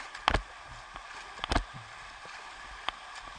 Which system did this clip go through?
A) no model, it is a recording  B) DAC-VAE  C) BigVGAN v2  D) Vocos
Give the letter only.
A